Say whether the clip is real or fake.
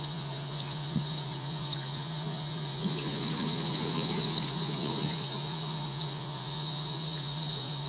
fake